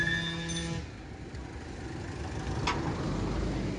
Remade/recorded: recorded